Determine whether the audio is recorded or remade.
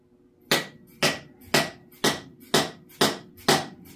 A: recorded